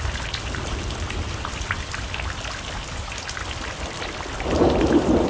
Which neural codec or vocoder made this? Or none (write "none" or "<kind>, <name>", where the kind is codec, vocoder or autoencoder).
none